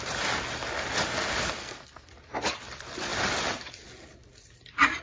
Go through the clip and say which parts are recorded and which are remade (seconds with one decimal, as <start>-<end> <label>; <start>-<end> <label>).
0.0-1.6 recorded; 1.6-2.1 remade; 2.1-5.0 recorded